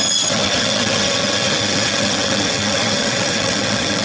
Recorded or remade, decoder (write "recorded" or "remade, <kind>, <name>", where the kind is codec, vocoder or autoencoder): remade, vocoder, WaveNeXt